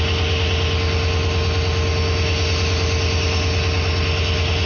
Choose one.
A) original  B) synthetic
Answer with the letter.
A